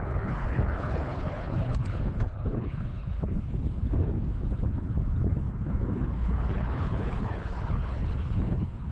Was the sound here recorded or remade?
remade